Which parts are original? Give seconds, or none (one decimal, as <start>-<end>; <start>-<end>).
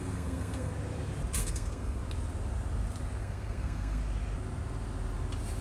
0.7-1.4; 2.0-3.2; 4.0-5.6